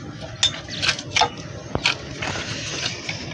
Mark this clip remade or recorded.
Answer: recorded